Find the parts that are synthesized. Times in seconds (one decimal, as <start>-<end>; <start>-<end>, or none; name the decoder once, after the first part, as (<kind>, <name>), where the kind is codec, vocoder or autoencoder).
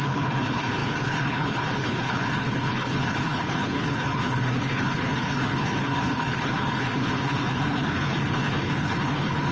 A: 0.0-9.5 (codec, HILCodec)